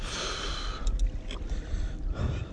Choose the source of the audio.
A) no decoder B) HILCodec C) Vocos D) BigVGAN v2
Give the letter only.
A